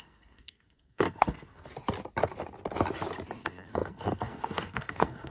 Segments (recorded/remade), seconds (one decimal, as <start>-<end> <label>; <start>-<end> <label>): 0.0-1.7 remade; 1.7-3.4 recorded; 3.4-5.3 remade